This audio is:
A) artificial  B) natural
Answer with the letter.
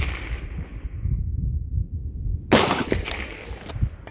B